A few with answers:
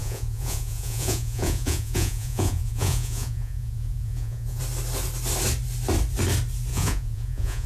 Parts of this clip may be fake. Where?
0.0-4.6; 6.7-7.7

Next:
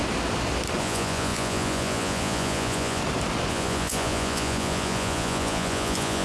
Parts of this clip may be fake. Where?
0.8-3.0; 3.5-6.2

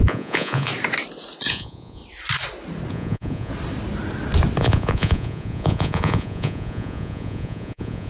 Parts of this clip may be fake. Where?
0.0-0.7; 1.5-2.0; 2.9-3.5; 4.6-8.1

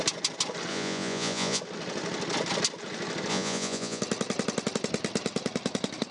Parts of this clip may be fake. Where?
0.7-1.6; 3.3-4.0